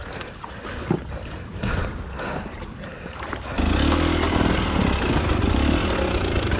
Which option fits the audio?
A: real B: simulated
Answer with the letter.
A